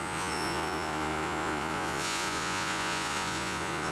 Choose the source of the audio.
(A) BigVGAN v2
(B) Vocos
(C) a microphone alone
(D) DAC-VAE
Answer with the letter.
B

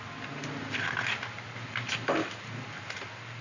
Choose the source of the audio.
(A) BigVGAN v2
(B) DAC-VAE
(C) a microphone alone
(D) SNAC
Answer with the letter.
C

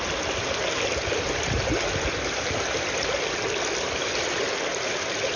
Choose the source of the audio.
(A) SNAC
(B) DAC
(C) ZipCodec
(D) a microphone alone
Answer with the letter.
D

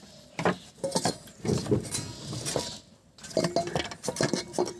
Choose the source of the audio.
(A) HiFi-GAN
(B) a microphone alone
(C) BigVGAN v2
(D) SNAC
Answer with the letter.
B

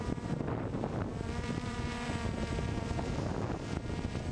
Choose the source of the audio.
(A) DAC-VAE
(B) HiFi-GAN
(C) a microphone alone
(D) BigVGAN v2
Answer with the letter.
D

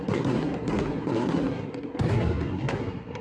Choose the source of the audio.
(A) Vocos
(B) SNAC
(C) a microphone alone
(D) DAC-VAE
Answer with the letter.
B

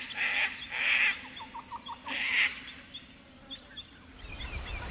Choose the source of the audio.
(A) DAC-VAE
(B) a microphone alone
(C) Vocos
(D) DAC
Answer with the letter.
B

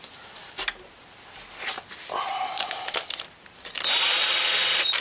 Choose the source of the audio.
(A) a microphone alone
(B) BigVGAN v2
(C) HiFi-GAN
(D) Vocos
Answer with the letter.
A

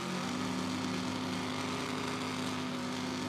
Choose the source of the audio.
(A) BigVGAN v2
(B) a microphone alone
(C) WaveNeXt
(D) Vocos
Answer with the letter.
B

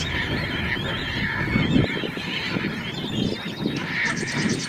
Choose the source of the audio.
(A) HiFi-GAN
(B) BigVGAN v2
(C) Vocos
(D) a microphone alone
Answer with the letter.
B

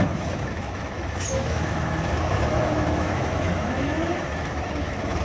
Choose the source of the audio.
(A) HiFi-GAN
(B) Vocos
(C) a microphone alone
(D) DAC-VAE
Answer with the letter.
D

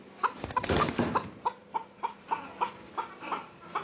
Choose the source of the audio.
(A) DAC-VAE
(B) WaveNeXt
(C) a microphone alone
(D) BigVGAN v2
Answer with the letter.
D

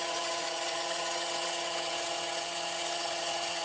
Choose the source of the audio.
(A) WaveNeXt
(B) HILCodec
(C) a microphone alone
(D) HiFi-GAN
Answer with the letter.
D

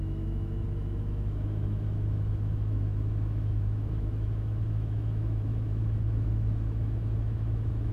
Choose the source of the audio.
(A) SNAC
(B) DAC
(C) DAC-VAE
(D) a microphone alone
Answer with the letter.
C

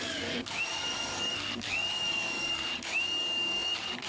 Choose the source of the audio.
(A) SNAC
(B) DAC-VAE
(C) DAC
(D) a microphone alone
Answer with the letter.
C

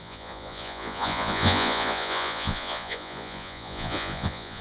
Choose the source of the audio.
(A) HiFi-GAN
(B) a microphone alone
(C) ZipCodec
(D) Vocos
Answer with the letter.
D